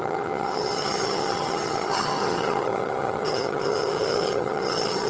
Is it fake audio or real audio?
fake